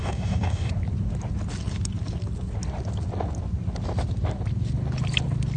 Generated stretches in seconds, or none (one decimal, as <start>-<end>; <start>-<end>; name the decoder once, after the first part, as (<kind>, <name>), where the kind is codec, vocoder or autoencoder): 0.0-0.7 (codec, DAC)